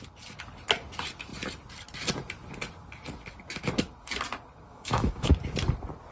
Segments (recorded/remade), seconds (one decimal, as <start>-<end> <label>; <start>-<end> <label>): 0.0-4.7 recorded; 4.7-5.3 remade; 5.3-6.1 recorded